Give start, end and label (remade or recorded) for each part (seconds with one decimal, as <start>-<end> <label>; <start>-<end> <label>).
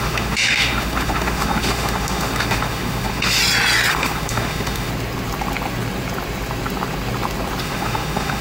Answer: 0.0-3.4 remade; 3.4-3.9 recorded; 3.9-4.9 remade; 4.9-7.6 recorded; 7.6-8.4 remade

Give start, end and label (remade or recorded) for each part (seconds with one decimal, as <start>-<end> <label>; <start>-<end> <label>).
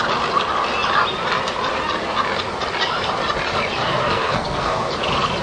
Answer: 0.0-4.0 recorded; 4.0-4.9 remade; 4.9-5.4 recorded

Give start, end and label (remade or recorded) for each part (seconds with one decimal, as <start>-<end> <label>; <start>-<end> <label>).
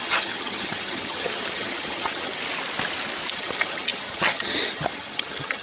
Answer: 0.0-2.4 remade; 2.4-3.3 recorded; 3.3-5.6 remade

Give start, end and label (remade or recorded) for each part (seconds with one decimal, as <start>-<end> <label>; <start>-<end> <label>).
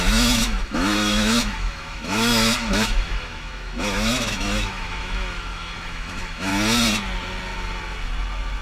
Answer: 0.0-6.5 remade; 6.5-8.6 recorded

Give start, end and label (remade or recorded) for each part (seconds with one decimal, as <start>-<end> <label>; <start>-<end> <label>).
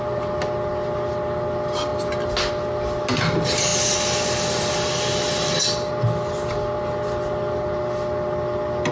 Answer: 0.0-8.9 recorded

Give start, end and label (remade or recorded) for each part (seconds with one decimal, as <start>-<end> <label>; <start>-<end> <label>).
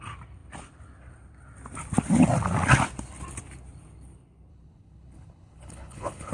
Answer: 0.0-4.5 recorded; 4.5-6.3 remade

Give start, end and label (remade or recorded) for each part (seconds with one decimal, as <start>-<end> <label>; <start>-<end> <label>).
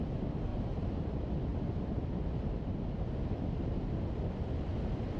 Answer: 0.0-0.5 remade; 0.5-1.0 recorded; 1.0-1.5 remade; 1.5-3.5 recorded; 3.5-5.2 remade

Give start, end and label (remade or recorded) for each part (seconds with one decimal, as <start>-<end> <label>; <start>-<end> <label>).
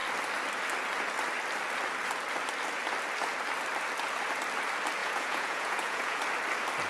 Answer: 0.0-5.0 recorded; 5.0-6.2 remade; 6.2-6.9 recorded